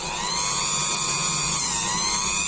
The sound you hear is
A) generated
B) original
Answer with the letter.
B